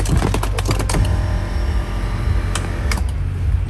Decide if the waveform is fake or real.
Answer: real